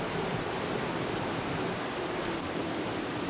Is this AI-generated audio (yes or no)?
no